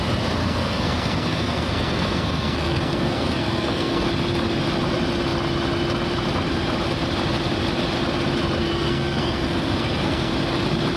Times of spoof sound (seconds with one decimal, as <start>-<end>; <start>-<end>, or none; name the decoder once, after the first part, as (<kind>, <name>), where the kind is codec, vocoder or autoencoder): 0.4-4.1 (codec, SNAC); 8.6-10.3